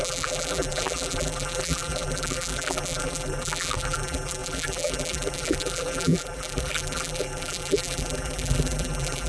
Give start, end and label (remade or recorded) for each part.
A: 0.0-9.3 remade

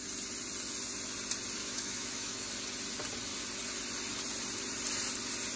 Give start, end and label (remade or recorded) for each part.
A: 0.0-1.6 recorded; 1.6-2.5 remade; 2.5-5.6 recorded

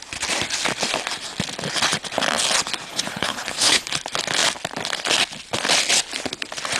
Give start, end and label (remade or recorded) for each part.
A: 0.0-2.9 recorded; 2.9-3.9 remade; 3.9-6.8 recorded

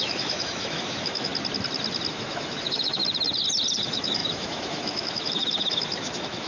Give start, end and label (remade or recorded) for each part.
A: 0.0-1.3 remade; 1.3-2.1 recorded; 2.1-3.0 remade; 3.0-3.8 recorded; 3.8-6.5 remade

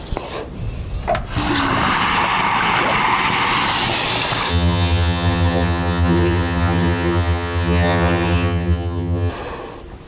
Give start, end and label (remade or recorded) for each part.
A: 0.0-4.5 recorded; 4.5-9.3 remade; 9.3-10.1 recorded

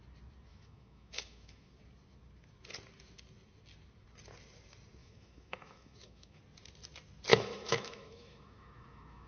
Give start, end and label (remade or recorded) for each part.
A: 0.0-0.5 recorded; 0.5-1.7 remade; 1.7-5.0 recorded; 5.0-6.4 remade; 6.4-7.3 recorded; 7.3-9.3 remade

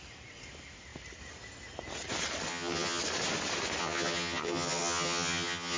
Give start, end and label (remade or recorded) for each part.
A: 0.0-2.5 recorded; 2.5-3.0 remade; 3.0-3.8 recorded; 3.8-5.8 remade